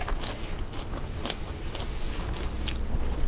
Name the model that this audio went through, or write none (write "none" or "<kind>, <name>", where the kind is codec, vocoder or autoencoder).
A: none